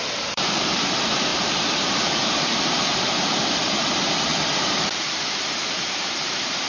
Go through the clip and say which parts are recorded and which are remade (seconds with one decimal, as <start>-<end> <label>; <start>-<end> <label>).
0.0-4.3 remade; 4.3-4.9 recorded; 4.9-6.7 remade